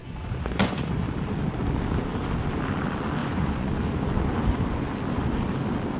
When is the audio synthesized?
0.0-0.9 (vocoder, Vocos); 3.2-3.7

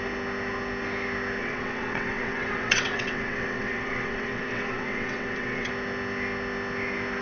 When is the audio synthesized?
1.4-5.7 (vocoder, WaveNeXt)

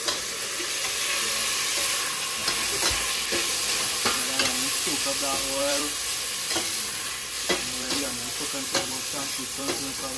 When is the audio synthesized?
0.0-2.4 (vocoder, BigVGAN v2); 5.6-10.2

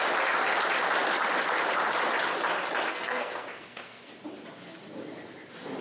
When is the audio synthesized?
2.9-4.1 (codec, SNAC)

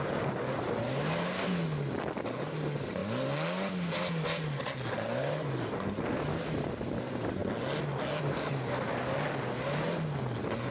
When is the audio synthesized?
none

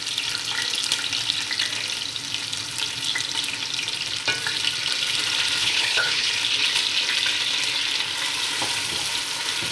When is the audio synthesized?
5.6-6.3 (codec, HILCodec)

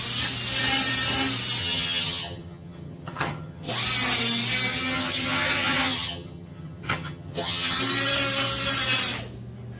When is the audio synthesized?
1.6-3.7 (vocoder, HiFi-GAN); 4.7-7.8

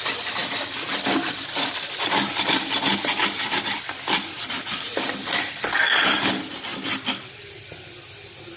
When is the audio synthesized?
0.4-4.4 (vocoder, BigVGAN v2); 6.7-7.4